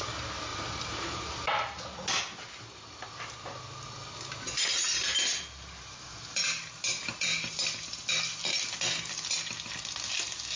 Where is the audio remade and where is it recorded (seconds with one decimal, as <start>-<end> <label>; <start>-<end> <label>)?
0.0-10.6 recorded